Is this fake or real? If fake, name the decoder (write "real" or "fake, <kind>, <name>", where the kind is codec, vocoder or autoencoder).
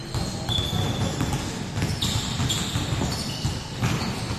real